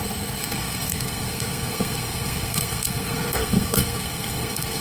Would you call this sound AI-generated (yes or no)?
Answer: yes